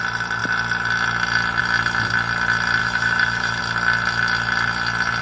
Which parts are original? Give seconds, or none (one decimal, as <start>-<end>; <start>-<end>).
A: 0.0-2.8; 3.6-5.2